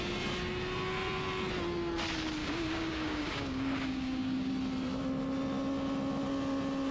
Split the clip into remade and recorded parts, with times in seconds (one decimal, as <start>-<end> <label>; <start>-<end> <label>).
0.0-2.4 recorded; 2.4-4.5 remade; 4.5-6.9 recorded